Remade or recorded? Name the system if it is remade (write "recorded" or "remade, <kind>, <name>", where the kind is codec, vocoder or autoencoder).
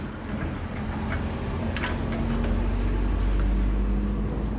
recorded